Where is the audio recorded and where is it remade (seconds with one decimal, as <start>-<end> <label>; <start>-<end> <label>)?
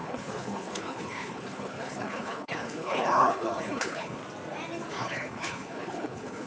0.0-4.2 remade; 4.2-4.9 recorded; 4.9-6.5 remade